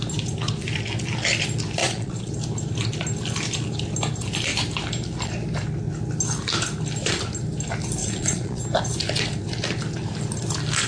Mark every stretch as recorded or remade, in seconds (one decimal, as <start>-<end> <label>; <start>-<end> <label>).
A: 0.0-1.8 recorded; 1.8-2.3 remade; 2.3-8.0 recorded; 8.0-8.6 remade; 8.6-10.9 recorded